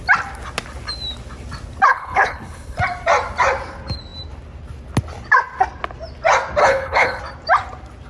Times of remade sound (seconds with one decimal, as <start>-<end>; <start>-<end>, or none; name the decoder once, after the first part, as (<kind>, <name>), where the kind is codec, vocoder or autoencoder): 1.9-2.8 (codec, HILCodec); 6.6-7.2